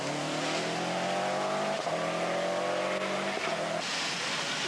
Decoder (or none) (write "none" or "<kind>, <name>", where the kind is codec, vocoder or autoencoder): none